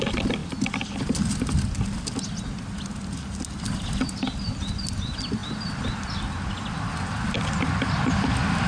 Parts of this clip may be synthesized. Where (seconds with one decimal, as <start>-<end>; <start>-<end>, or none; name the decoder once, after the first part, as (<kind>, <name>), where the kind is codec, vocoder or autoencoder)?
none

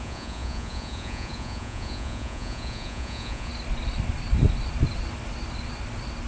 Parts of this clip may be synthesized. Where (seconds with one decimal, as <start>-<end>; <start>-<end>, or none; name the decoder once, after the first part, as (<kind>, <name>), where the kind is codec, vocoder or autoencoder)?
0.0-3.5 (vocoder, Vocos)